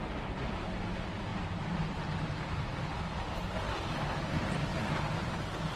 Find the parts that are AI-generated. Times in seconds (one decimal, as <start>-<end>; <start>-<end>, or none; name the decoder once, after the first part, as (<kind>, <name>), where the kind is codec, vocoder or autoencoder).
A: none